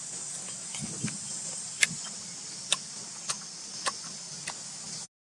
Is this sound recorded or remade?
recorded